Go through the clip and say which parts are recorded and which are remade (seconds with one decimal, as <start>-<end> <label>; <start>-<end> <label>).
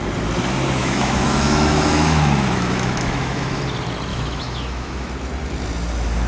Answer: 0.0-0.8 recorded; 0.8-3.6 remade; 3.6-4.1 recorded; 4.1-5.1 remade; 5.1-6.3 recorded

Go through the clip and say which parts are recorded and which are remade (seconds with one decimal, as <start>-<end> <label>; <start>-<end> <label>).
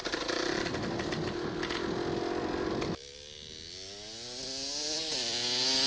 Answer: 0.0-0.5 remade; 0.5-5.9 recorded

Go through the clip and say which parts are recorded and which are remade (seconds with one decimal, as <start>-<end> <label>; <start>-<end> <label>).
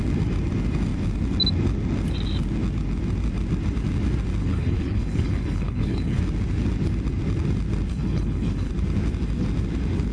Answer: 0.0-4.4 recorded; 4.4-6.2 remade; 6.2-7.9 recorded; 7.9-8.7 remade; 8.7-10.1 recorded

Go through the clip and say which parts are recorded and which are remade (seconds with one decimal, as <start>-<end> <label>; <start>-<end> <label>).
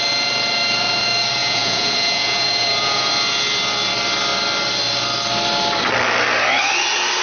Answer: 0.0-1.4 recorded; 1.4-3.1 remade; 3.1-7.2 recorded